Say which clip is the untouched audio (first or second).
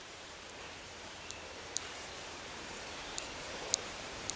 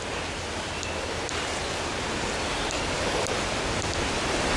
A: second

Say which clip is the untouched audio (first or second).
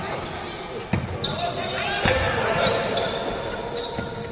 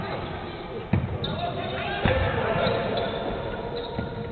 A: first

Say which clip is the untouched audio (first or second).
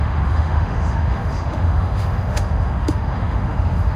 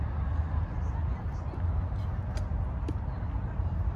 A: second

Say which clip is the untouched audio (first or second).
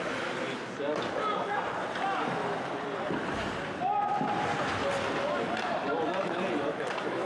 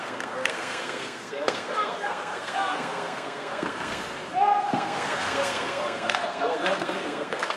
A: first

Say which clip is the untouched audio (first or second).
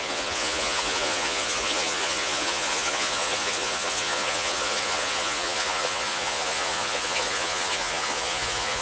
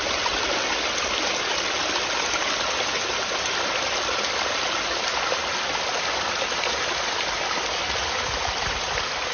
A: second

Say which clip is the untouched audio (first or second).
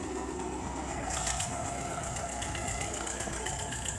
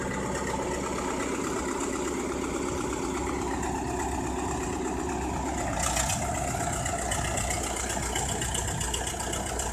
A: second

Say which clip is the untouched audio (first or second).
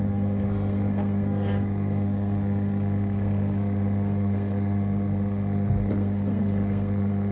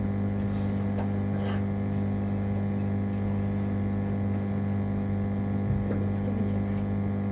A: second